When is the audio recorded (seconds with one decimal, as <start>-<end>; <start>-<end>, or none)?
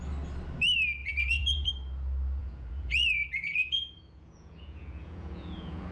0.0-1.0; 1.7-2.4